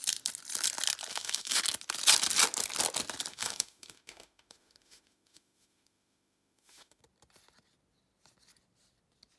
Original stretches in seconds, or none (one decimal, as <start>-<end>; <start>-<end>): 0.0-1.1; 1.6-3.3; 7.0-9.4